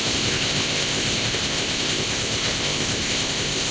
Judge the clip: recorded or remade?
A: remade